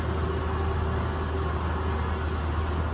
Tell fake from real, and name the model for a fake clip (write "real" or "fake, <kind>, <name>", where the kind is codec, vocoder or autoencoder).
real